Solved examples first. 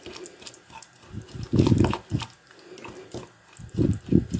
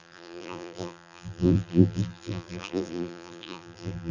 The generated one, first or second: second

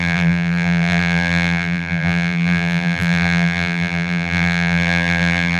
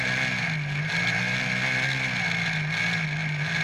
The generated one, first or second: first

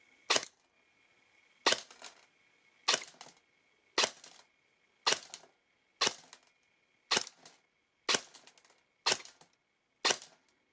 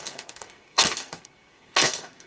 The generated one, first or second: second